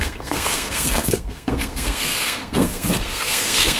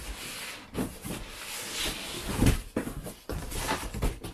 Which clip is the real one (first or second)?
second